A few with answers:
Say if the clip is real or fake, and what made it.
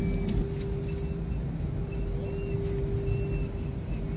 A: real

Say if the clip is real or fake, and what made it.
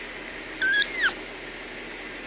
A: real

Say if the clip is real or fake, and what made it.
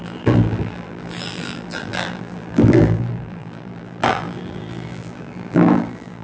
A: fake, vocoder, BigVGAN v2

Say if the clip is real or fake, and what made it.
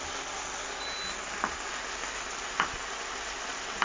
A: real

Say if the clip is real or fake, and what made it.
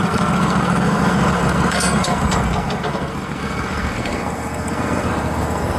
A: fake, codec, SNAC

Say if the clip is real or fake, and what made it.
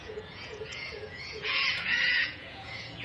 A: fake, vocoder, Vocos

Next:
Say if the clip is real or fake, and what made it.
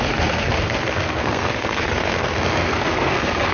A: fake, codec, SNAC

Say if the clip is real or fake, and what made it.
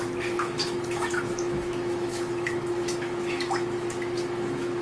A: fake, autoencoder, DAC-VAE